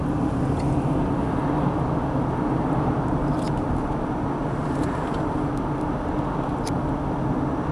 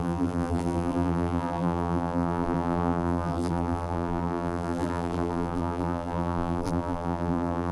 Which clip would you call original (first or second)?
first